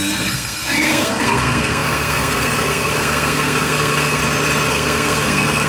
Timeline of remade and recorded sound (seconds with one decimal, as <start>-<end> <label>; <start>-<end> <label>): 0.0-4.2 remade; 4.2-4.7 recorded; 4.7-5.7 remade